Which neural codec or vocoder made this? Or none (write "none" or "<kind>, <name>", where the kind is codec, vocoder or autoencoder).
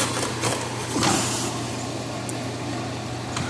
none